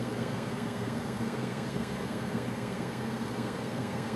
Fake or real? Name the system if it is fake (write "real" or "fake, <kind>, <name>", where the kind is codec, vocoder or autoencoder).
fake, codec, SNAC